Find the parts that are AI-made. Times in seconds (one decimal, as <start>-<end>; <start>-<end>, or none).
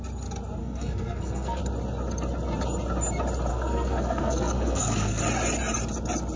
0.6-1.6; 3.5-5.2